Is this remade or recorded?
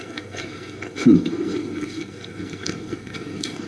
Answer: remade